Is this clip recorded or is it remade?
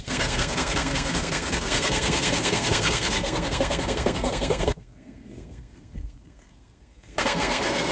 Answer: remade